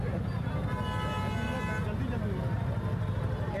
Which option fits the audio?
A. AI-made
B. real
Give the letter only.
B